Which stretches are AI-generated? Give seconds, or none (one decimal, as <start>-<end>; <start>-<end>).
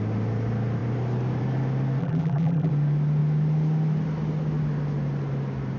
2.0-2.7